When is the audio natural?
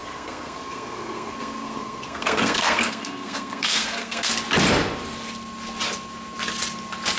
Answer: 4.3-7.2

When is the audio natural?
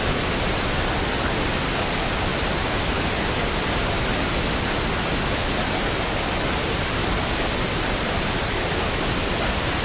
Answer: 0.0-7.0; 8.3-9.8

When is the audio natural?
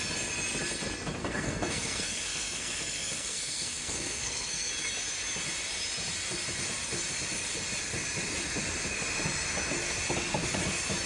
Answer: 0.0-1.2; 4.7-11.1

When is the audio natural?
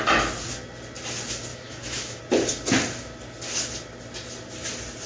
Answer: 0.0-1.5; 2.2-5.1